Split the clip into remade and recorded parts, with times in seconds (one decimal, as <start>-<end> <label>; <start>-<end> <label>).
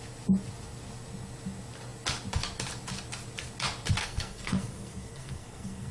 0.0-4.0 recorded; 4.0-5.9 remade